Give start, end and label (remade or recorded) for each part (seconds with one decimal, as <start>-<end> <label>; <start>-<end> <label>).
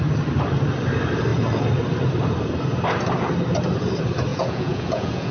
0.0-4.3 recorded; 4.3-5.3 remade